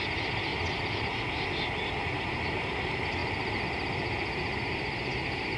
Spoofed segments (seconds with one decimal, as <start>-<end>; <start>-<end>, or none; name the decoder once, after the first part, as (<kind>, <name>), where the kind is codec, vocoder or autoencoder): none